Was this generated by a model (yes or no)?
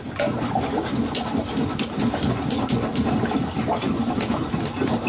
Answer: no